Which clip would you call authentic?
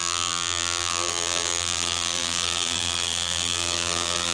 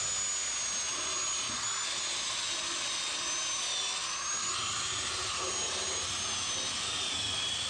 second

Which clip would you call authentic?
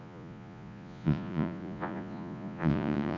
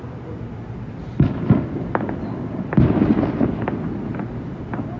second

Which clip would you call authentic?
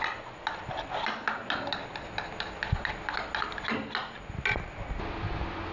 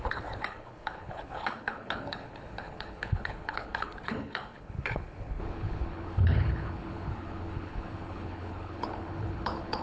first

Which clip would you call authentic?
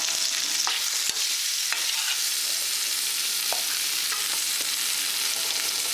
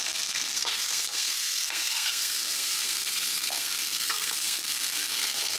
first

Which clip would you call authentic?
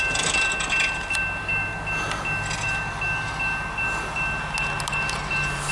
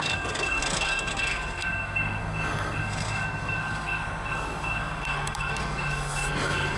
first